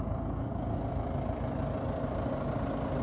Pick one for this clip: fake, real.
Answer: real